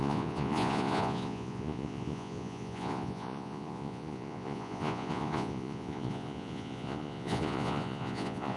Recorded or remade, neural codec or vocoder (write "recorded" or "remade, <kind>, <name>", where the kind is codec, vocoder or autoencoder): remade, vocoder, Vocos